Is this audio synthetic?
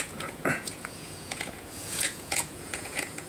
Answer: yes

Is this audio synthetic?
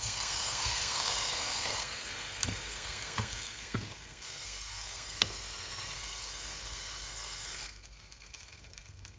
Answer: yes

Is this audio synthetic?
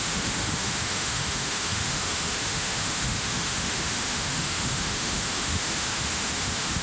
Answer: yes